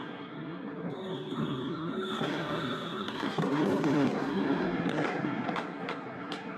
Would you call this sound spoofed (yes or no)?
yes